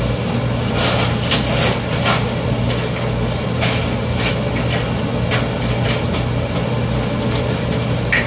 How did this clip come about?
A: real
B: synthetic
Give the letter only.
A